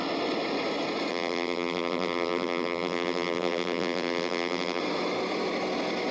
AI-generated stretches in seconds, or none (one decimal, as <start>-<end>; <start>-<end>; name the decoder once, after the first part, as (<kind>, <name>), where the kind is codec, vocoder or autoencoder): 1.1-4.8 (vocoder, BigVGAN v2)